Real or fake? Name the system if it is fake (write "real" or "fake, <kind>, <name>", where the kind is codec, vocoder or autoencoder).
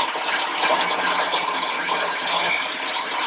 real